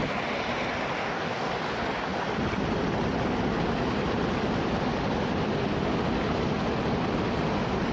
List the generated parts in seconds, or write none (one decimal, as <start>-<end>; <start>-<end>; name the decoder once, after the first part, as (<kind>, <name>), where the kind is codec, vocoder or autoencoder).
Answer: 1.0-1.5 (codec, DAC)